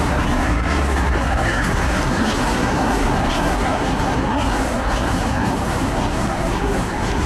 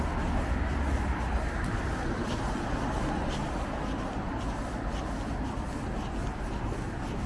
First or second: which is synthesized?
first